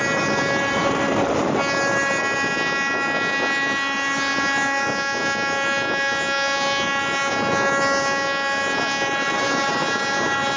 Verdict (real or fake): real